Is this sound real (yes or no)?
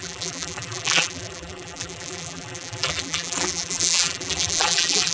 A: no